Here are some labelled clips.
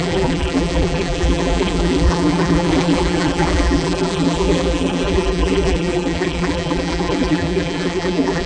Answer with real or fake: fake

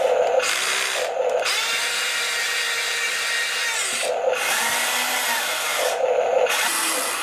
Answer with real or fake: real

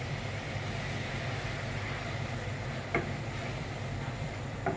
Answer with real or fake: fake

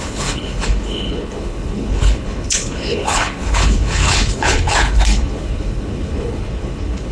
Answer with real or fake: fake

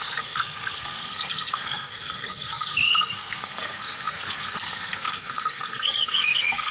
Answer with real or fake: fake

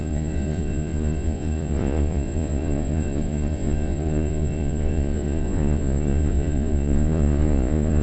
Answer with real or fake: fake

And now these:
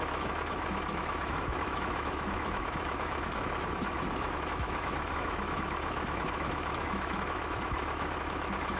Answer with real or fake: fake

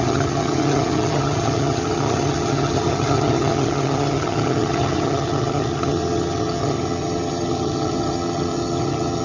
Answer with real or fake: fake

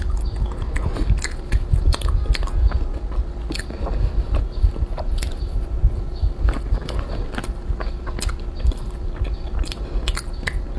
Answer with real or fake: real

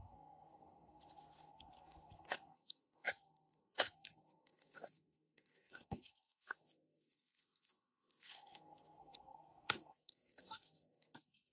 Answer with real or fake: fake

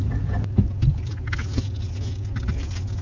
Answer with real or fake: real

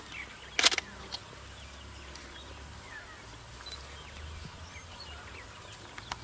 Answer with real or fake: real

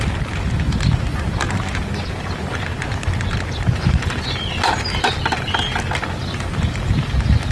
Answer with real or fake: real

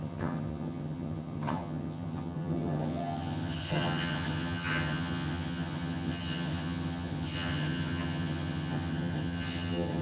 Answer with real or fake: fake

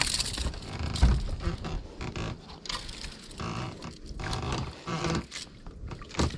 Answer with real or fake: real